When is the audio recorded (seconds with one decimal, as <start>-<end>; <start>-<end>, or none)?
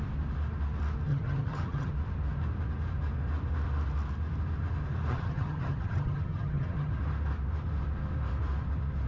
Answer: 0.0-1.1; 1.9-5.1; 6.9-9.1